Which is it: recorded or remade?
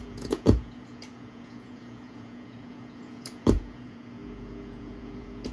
remade